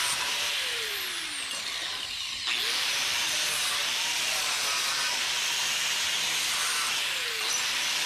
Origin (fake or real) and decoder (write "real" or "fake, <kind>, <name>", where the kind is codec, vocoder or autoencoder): real